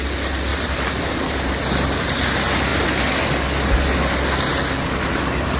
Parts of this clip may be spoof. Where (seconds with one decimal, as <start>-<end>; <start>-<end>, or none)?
0.5-1.5